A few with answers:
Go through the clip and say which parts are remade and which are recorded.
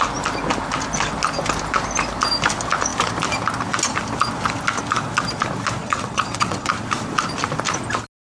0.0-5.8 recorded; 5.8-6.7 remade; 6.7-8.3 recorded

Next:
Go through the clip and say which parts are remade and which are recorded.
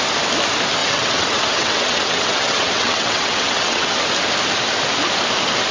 0.0-0.8 recorded; 0.8-4.0 remade; 4.0-5.7 recorded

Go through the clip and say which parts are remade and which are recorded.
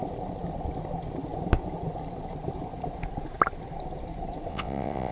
0.0-4.5 recorded; 4.5-5.1 remade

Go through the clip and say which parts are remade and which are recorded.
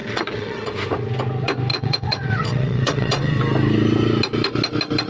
0.0-0.7 remade; 0.7-1.7 recorded; 1.7-3.4 remade; 3.4-5.1 recorded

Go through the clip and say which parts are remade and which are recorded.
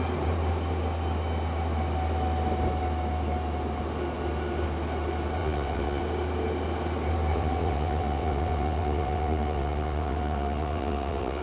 0.0-5.4 recorded; 5.4-6.0 remade; 6.0-7.3 recorded; 7.3-11.4 remade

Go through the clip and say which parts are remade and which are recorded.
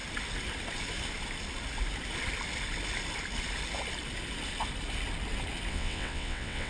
0.0-5.7 recorded; 5.7-6.7 remade